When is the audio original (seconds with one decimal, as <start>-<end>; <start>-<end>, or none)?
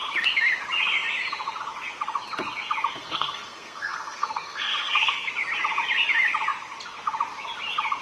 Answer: 0.0-2.9; 5.3-8.0